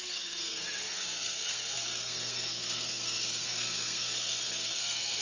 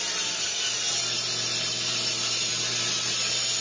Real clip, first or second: second